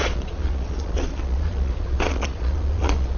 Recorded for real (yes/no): no